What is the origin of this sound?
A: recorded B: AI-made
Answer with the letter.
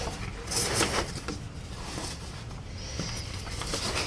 A